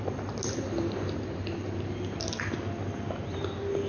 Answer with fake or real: real